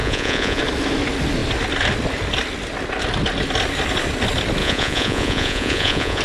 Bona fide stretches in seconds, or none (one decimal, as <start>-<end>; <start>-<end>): 0.6-4.6